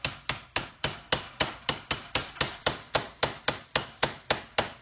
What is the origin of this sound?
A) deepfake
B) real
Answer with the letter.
B